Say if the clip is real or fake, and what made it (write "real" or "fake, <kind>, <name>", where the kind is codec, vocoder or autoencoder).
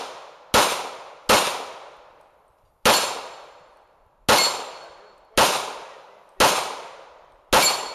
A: real